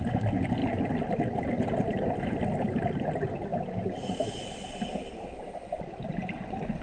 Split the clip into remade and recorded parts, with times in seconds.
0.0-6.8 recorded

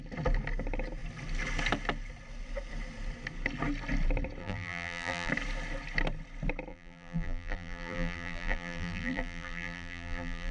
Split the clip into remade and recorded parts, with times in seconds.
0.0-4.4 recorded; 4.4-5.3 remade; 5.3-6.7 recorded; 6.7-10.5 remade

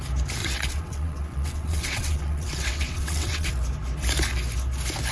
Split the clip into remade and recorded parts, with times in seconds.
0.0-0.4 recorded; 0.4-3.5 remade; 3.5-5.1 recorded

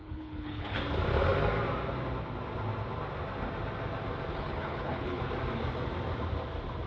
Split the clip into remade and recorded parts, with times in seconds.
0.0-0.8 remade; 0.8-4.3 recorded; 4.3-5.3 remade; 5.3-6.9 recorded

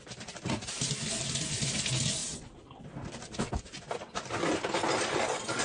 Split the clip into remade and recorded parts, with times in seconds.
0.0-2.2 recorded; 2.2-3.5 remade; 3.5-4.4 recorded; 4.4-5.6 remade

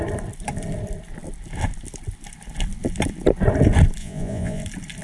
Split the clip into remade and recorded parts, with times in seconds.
0.0-4.0 recorded; 4.0-4.6 remade; 4.6-5.0 recorded

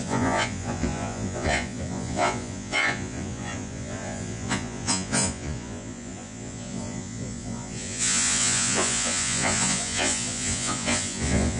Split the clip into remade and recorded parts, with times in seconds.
0.0-11.6 remade